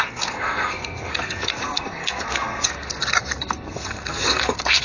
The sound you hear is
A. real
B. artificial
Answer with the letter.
B